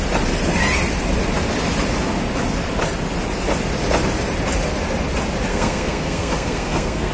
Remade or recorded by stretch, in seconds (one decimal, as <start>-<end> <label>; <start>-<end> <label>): 0.0-5.5 recorded; 5.5-7.1 remade